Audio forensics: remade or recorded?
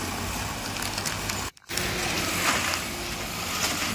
recorded